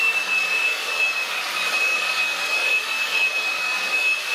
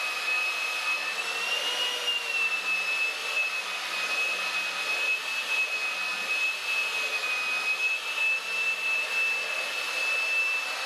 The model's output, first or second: first